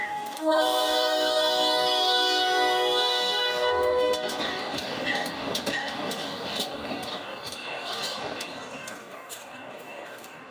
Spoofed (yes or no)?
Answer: yes